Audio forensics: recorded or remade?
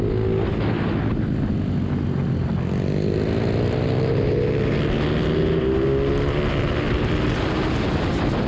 recorded